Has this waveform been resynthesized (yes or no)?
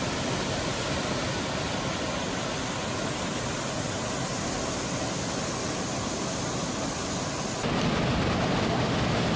no